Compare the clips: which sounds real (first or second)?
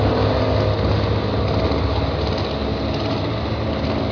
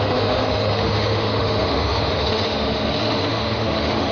first